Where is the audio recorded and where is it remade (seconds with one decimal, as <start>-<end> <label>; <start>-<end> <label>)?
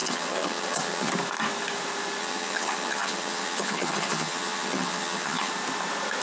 0.0-1.1 remade; 1.1-2.2 recorded; 2.2-5.5 remade; 5.5-6.2 recorded